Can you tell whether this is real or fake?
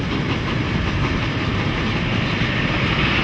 real